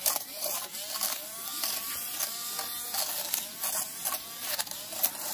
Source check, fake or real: real